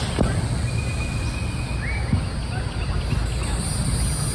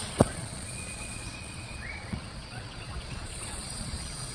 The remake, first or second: second